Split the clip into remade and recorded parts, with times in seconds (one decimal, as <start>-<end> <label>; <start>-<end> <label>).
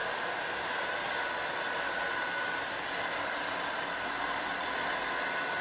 0.0-5.6 recorded